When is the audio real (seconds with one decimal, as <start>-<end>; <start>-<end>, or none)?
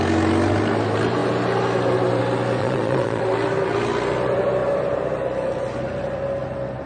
0.0-2.6; 3.2-6.9